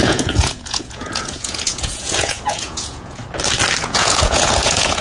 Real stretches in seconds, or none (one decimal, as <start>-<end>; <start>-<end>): 3.2-3.8